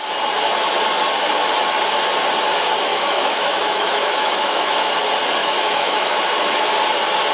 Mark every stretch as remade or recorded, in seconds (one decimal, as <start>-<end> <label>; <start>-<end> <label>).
0.0-2.9 recorded; 2.9-4.9 remade; 4.9-5.4 recorded; 5.4-6.2 remade; 6.2-7.3 recorded